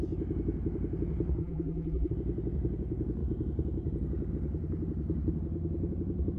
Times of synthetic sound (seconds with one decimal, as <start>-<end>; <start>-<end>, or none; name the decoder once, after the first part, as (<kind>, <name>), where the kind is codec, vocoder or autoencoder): 1.4-2.1 (vocoder, BigVGAN v2)